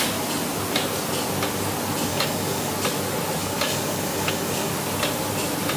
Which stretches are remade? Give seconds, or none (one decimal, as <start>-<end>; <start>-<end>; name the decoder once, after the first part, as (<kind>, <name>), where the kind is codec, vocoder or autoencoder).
2.1-2.7 (codec, DAC); 3.4-4.7